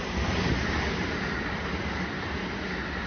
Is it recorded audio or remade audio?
recorded